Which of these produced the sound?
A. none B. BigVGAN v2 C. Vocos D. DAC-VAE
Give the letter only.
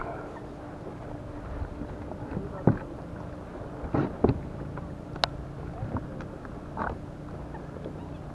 A